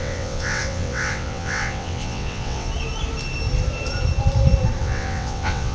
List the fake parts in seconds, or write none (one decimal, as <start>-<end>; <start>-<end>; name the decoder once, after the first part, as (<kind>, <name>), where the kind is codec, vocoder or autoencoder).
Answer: 0.0-2.7 (vocoder, WaveNeXt); 4.8-5.7